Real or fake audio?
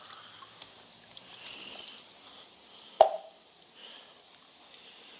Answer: real